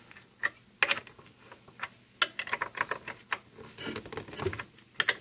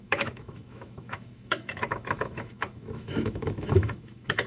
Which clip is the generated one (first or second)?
second